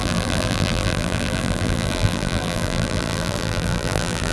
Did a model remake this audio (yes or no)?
yes